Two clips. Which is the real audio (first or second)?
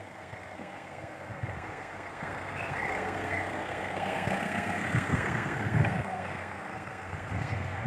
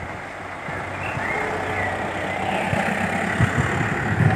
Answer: second